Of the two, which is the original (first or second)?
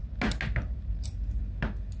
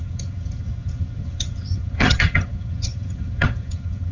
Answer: first